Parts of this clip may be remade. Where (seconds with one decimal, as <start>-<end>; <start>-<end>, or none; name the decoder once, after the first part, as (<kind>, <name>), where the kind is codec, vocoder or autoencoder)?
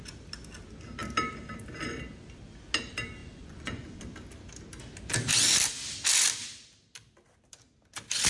3.2-4.0 (vocoder, Vocos)